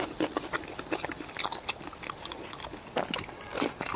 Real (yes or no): yes